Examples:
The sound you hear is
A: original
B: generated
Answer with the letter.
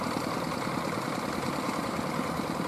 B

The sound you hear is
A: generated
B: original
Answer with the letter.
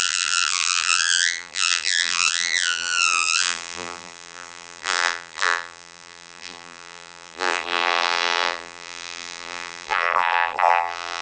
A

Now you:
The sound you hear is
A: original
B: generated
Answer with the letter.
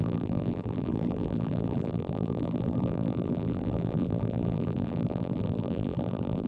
B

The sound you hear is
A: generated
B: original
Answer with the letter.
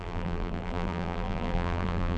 A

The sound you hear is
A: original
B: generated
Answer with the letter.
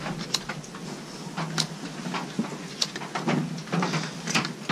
A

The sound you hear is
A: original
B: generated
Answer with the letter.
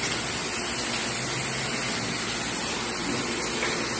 A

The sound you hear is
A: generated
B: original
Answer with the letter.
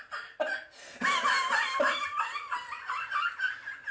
B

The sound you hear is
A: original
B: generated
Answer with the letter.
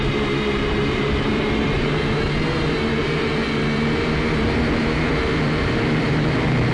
B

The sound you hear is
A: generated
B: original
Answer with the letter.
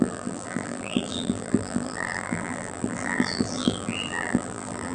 A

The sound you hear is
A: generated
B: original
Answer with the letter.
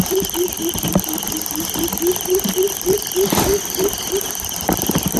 A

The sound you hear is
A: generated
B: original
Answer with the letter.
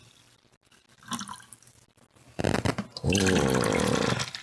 B